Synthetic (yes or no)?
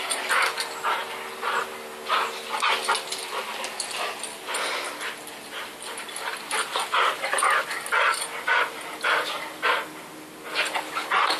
no